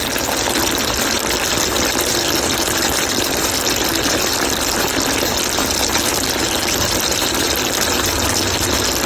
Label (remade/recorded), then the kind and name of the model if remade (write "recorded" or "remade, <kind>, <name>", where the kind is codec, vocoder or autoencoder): recorded